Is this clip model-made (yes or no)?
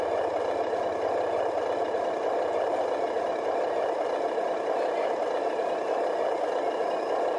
no